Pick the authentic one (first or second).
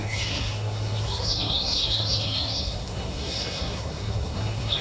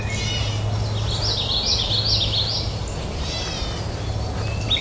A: second